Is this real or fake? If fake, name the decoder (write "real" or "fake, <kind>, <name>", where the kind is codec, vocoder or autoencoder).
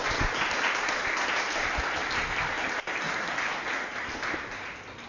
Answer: real